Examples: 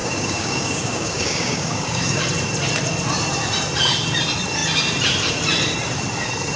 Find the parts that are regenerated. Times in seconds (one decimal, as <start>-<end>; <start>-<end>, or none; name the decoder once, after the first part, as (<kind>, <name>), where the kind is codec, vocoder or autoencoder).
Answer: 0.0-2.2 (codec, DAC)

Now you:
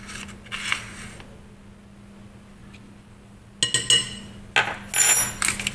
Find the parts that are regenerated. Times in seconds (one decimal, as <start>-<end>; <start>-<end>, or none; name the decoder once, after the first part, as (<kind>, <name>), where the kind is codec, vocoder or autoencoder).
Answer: none

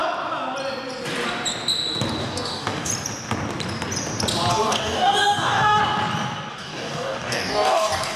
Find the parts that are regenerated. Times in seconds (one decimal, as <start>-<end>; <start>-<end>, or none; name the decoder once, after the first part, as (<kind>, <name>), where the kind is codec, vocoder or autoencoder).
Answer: 2.2-2.9 (codec, DAC); 4.5-5.8; 6.5-8.2